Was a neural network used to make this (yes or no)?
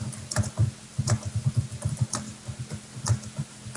no